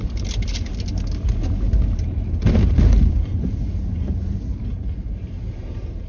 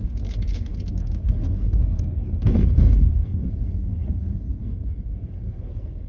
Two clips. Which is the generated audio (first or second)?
second